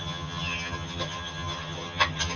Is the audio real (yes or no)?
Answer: no